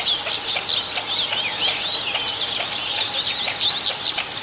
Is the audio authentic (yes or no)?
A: yes